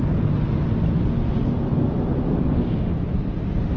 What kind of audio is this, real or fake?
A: real